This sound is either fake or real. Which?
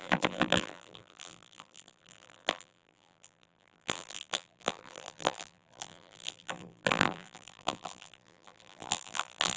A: fake